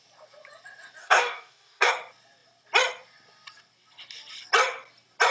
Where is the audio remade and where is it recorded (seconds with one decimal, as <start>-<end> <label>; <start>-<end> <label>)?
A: 0.0-1.0 recorded; 1.0-1.9 remade; 1.9-5.3 recorded